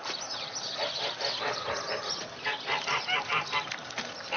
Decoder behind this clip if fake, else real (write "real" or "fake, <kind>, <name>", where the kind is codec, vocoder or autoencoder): fake, vocoder, BigVGAN v2